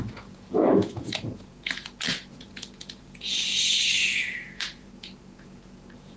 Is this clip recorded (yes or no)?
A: no